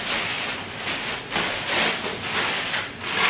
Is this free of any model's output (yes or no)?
yes